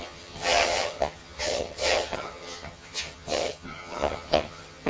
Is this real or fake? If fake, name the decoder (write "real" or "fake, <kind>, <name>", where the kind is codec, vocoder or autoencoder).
fake, vocoder, HiFi-GAN